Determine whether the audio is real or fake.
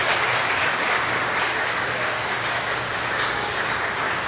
fake